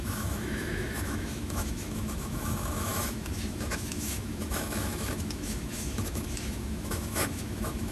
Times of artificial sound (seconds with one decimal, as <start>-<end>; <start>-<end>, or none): 0.0-7.9